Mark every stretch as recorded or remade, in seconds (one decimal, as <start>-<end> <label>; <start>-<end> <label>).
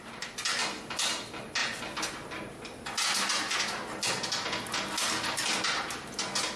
0.0-6.6 recorded